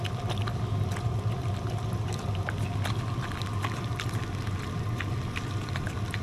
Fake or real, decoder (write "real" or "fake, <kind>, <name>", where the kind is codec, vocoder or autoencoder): real